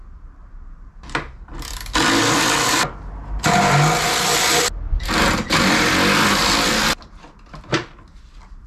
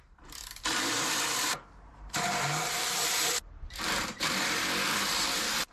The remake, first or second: second